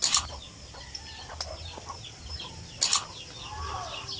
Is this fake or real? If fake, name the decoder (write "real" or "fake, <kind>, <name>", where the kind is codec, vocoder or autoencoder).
real